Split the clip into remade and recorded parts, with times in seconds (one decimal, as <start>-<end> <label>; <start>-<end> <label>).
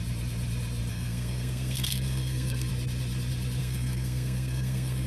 0.0-0.9 recorded; 0.9-2.7 remade; 2.7-3.6 recorded; 3.6-5.1 remade